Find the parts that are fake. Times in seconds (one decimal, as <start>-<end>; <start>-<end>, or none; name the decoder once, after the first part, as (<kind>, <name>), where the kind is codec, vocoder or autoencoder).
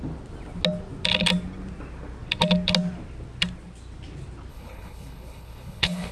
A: 4.5-6.1 (codec, HILCodec)